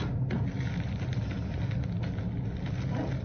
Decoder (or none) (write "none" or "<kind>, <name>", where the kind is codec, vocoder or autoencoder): none